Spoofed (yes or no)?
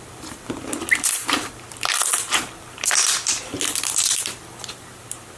yes